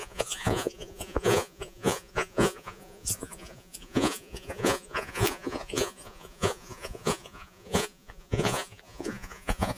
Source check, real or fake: fake